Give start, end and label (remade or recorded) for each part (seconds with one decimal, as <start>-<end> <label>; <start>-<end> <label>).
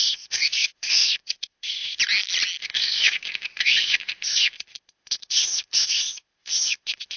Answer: 0.0-2.0 remade; 2.0-2.6 recorded; 2.6-7.2 remade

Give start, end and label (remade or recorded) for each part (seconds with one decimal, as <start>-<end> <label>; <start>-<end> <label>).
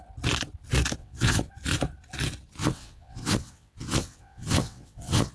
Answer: 0.0-1.0 recorded; 1.0-1.5 remade; 1.5-2.6 recorded; 2.6-5.3 remade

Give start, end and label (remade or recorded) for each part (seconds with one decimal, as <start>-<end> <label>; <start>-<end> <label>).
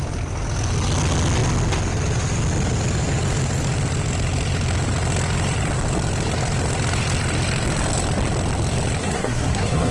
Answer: 0.0-9.0 recorded; 9.0-9.9 remade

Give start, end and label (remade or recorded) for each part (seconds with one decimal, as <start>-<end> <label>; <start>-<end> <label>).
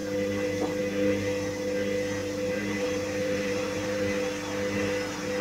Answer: 0.0-2.2 recorded; 2.2-4.0 remade; 4.0-5.4 recorded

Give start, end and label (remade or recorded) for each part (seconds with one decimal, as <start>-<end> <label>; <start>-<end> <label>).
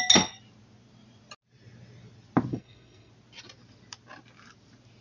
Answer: 0.0-2.5 recorded; 2.5-3.1 remade; 3.1-5.0 recorded